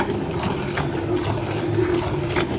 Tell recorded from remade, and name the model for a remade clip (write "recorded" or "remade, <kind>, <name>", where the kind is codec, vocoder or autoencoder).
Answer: recorded